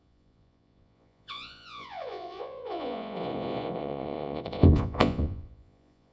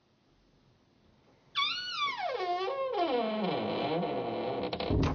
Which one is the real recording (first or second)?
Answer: second